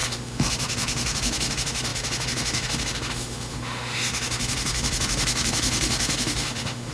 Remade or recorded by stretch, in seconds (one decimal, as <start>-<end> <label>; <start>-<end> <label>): 0.0-6.9 remade